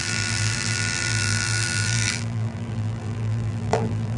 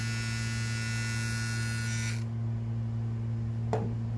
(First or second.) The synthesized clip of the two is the first